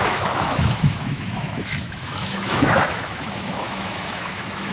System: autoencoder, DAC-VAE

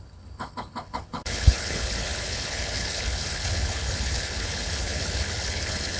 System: codec, HILCodec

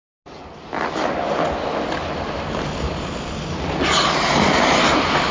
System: none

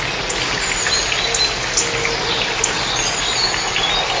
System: none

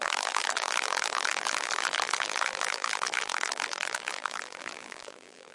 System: vocoder, BigVGAN v2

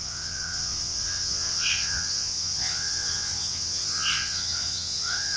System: vocoder, WaveNeXt